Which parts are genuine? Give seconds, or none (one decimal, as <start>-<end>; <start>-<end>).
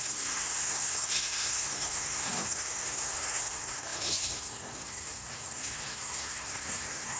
none